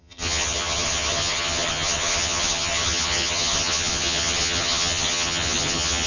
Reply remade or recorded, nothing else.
remade